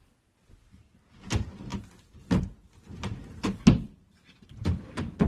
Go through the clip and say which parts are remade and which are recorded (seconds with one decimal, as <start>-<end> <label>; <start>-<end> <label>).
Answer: 0.0-5.3 recorded